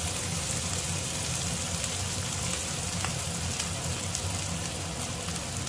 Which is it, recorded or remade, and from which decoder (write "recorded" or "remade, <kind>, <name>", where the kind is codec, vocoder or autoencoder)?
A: recorded